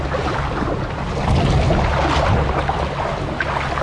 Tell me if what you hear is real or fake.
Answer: real